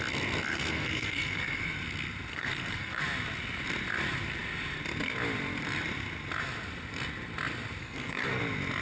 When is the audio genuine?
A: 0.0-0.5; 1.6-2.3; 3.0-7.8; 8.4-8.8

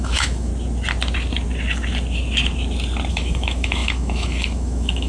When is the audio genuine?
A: 0.5-3.1

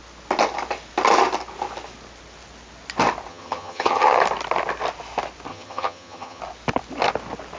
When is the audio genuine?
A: 0.0-3.3; 4.2-5.5; 6.4-7.6

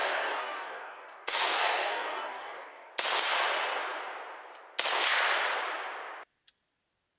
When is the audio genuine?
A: 2.9-7.2

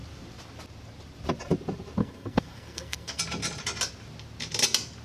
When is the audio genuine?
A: 0.0-2.0; 3.2-5.0

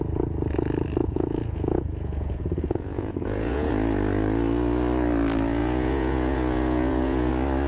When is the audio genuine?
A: 0.0-1.0; 3.7-5.6; 7.3-7.7